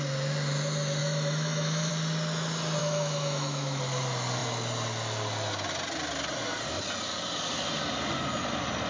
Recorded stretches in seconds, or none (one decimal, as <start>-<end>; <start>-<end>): 0.0-1.0; 1.9-2.8; 3.8-8.9